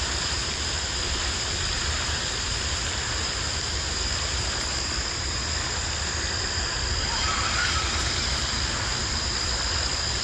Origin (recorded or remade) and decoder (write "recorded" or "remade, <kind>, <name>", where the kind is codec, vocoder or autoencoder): recorded